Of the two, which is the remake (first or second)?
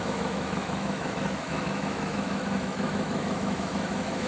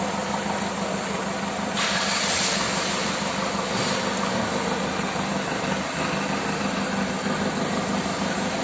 first